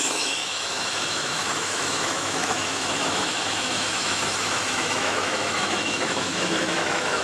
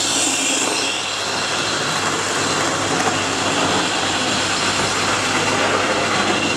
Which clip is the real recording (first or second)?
second